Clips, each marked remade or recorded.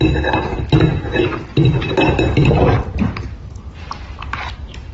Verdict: recorded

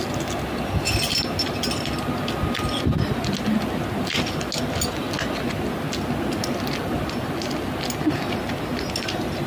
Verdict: recorded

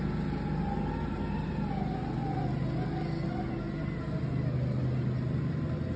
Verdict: recorded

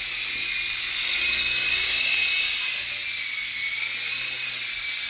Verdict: recorded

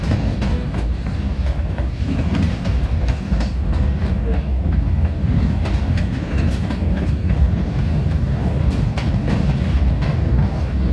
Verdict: remade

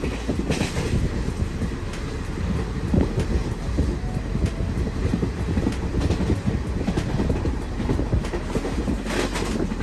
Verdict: recorded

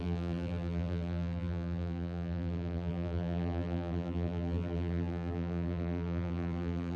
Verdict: remade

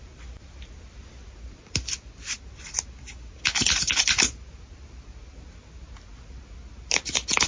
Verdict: recorded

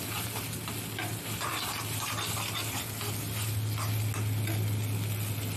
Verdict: recorded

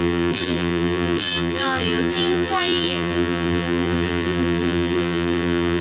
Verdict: remade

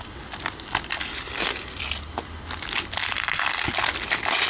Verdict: recorded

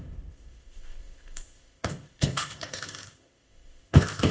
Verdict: remade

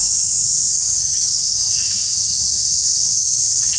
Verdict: remade